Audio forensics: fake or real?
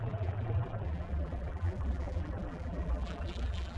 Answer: fake